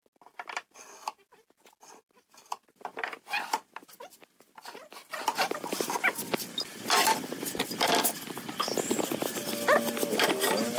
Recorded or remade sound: recorded